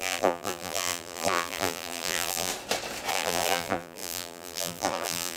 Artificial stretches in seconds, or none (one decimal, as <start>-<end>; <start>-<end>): 0.0-2.5; 3.1-5.4